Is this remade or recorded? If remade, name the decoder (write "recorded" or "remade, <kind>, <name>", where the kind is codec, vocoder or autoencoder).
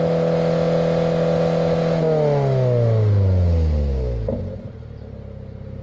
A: recorded